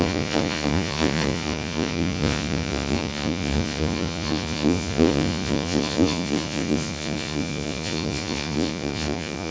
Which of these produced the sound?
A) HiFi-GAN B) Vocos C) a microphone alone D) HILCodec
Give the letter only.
B